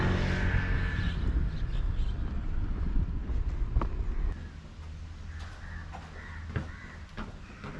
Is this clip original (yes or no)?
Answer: yes